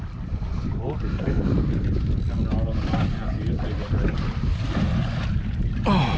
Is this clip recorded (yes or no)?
yes